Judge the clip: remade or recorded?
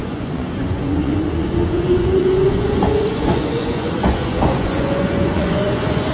remade